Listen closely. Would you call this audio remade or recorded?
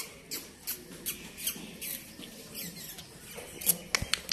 recorded